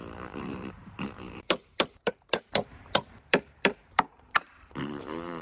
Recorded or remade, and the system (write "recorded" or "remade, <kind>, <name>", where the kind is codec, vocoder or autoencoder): remade, vocoder, BigVGAN v2